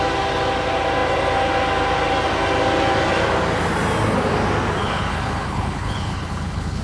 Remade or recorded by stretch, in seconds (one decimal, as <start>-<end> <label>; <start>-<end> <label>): 0.0-4.8 recorded; 4.8-6.8 remade